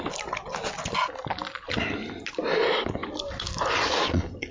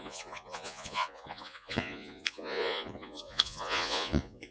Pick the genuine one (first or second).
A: first